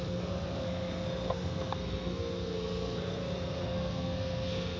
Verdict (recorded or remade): remade